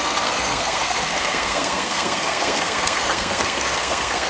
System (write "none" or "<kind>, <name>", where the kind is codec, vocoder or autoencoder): codec, SNAC